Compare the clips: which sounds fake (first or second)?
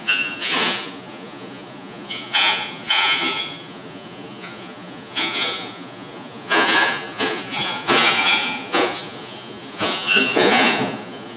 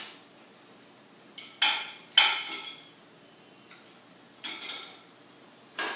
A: first